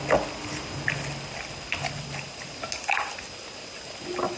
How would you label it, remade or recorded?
recorded